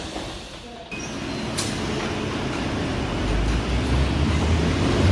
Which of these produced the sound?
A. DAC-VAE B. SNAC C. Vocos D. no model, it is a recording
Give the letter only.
D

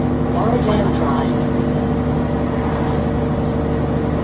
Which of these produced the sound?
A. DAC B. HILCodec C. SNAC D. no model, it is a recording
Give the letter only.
D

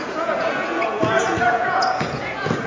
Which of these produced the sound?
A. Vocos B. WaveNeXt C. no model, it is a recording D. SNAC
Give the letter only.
A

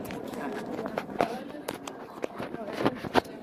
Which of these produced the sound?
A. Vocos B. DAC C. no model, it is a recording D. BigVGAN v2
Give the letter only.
C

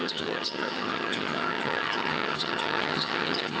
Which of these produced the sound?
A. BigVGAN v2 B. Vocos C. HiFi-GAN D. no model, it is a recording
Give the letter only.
C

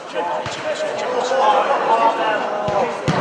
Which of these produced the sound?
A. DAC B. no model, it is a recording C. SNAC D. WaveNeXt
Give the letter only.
B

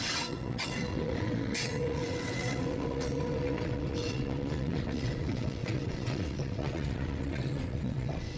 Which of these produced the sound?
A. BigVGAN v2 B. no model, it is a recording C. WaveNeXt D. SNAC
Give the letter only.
C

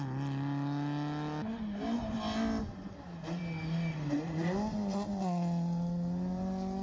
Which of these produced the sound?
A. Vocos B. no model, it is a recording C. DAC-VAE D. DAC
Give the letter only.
B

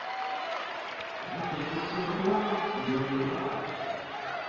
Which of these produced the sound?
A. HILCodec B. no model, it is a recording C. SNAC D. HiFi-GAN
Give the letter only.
B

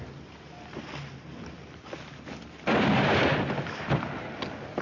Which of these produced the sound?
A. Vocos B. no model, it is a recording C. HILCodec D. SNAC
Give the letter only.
B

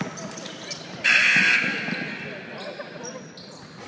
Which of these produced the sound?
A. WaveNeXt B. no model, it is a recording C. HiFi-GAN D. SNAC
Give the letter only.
B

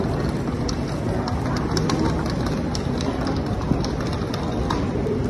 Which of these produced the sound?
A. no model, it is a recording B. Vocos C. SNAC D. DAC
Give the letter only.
A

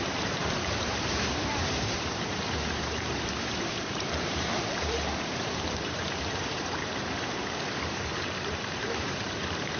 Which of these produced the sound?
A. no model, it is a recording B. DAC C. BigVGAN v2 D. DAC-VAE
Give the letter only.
C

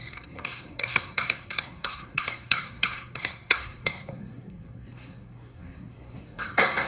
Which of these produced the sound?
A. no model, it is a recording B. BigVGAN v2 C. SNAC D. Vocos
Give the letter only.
C